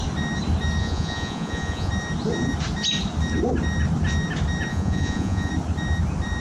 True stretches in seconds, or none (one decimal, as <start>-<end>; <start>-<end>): 0.0-0.8; 1.9-4.7; 5.5-6.4